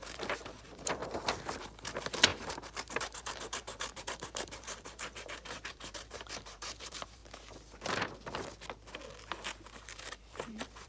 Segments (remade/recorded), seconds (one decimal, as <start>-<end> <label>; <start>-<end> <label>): 0.0-1.0 remade; 1.0-1.6 recorded; 1.6-7.2 remade; 7.2-9.7 recorded; 9.7-10.9 remade